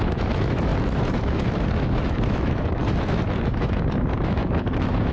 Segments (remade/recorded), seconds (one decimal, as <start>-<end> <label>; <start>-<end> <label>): 0.0-5.1 remade